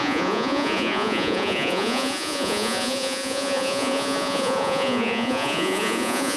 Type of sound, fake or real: fake